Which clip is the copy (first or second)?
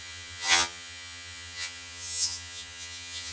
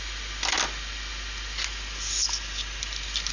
first